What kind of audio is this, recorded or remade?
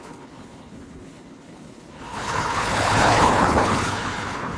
remade